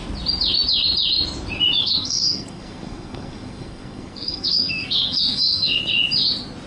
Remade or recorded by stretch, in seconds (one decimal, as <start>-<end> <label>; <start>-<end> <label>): 0.0-1.8 recorded; 1.8-5.8 remade; 5.8-6.7 recorded